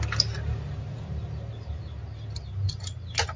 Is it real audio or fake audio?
real